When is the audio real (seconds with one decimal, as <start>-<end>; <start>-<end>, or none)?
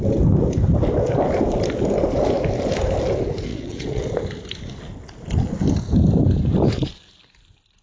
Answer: 0.0-3.5; 4.0-7.8